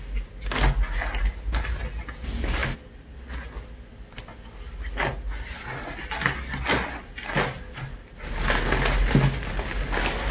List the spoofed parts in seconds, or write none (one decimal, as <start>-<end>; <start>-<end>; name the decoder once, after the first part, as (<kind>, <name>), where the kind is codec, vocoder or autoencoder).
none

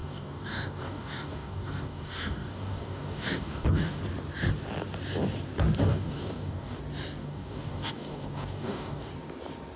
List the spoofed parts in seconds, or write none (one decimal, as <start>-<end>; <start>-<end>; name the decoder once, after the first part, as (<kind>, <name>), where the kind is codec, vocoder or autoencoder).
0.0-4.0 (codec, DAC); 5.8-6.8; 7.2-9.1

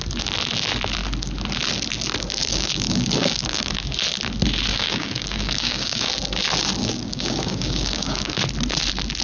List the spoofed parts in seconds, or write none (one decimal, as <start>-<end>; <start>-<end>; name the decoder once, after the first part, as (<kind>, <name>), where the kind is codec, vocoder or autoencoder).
2.4-3.7 (codec, DAC); 4.7-6.1; 6.8-8.4

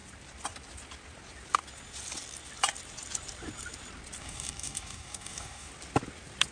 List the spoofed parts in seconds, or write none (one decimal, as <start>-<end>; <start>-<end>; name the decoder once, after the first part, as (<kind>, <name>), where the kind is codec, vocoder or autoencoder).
4.2-5.7 (codec, DAC)